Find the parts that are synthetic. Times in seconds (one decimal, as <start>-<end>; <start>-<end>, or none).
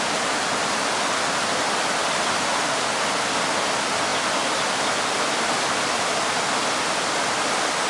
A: none